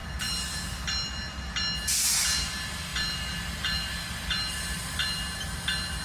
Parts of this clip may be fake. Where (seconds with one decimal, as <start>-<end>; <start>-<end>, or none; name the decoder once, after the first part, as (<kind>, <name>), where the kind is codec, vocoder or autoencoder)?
none